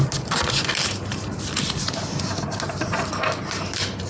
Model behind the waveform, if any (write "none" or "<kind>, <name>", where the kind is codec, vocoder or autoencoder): none